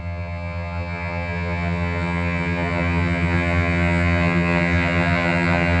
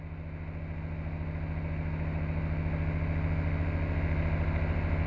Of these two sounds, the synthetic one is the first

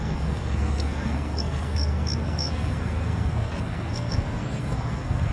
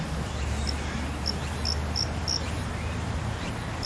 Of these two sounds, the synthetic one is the first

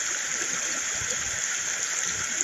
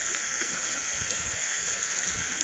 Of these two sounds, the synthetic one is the second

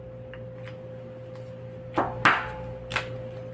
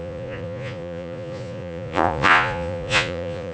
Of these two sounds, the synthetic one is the second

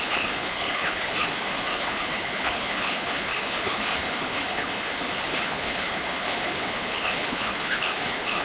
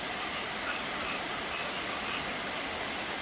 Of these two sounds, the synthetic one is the first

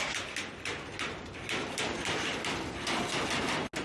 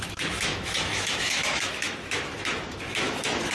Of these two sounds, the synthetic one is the second